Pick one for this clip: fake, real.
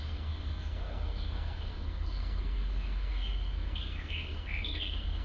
fake